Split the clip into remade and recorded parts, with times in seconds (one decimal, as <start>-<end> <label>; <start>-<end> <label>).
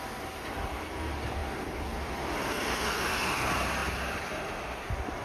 0.0-5.2 remade